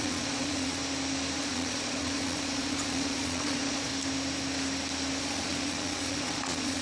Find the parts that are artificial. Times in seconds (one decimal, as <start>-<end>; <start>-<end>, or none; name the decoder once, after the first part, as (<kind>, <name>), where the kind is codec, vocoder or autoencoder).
0.0-0.8 (vocoder, Vocos); 1.4-3.9; 5.2-6.8

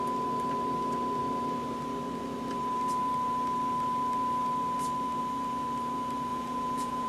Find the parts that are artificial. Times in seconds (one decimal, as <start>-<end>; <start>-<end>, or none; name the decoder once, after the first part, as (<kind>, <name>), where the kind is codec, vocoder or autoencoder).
6.3-7.1 (vocoder, Vocos)

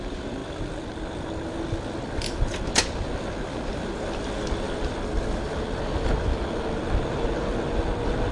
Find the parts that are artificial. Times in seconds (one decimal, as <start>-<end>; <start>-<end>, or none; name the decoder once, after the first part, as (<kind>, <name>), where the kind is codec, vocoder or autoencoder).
none

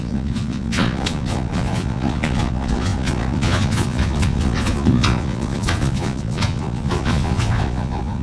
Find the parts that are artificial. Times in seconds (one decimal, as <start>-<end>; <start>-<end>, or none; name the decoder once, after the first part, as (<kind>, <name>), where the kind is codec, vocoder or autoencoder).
0.0-8.2 (vocoder, Vocos)

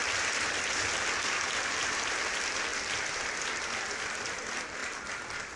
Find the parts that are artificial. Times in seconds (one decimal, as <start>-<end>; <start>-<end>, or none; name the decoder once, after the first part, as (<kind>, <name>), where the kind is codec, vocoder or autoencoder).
none

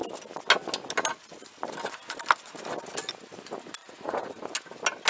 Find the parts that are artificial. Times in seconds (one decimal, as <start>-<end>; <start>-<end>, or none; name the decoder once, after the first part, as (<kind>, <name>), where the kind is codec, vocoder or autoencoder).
3.8-4.4 (vocoder, Vocos)

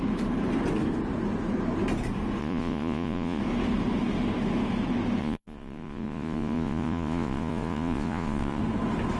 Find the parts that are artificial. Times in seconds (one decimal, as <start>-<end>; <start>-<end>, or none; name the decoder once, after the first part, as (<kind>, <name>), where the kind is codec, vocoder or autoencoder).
2.4-3.4 (vocoder, Vocos); 5.2-8.6

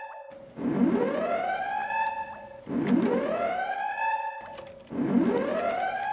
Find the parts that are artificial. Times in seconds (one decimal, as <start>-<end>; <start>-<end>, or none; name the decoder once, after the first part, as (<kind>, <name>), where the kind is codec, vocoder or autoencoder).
none